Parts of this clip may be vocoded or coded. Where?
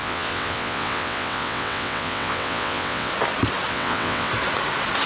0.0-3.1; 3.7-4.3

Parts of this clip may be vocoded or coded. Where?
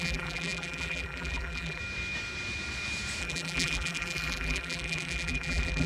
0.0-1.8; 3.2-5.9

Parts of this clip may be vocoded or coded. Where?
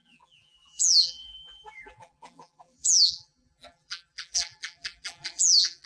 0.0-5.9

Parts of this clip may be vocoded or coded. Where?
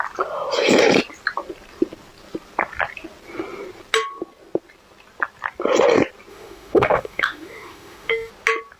6.3-8.3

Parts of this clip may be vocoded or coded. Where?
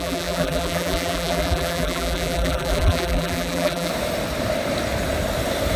0.0-3.9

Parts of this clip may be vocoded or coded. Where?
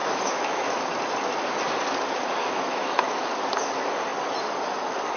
0.0-0.8; 2.4-3.3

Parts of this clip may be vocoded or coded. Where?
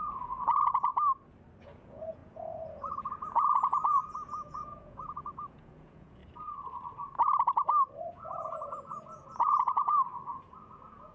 0.0-0.9; 1.6-6.2; 8.1-11.1